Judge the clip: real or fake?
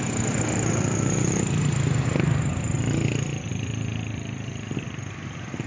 real